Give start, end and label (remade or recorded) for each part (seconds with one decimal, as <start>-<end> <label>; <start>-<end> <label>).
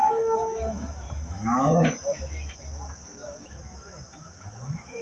0.0-5.0 remade